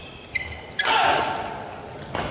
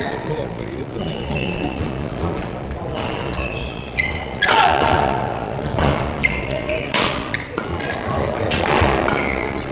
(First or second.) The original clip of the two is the first